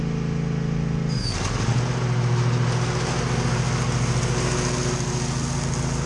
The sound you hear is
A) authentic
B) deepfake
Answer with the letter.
A